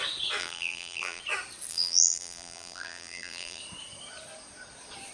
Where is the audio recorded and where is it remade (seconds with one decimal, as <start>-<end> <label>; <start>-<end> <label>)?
0.0-0.4 recorded; 0.4-1.2 remade; 1.2-1.7 recorded; 1.7-3.6 remade; 3.6-5.1 recorded